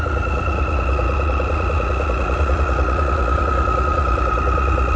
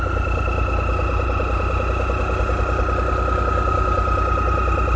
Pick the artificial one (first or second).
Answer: first